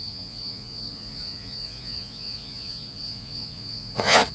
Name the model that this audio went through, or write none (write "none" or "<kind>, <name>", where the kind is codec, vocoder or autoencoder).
vocoder, Vocos